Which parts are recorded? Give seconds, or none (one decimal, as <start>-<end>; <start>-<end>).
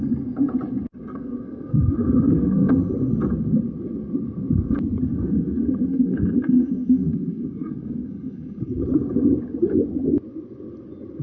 0.0-1.1; 2.7-5.1; 8.8-11.2